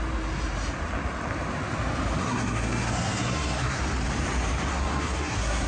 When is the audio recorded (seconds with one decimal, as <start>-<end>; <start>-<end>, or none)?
0.0-2.2; 3.8-4.7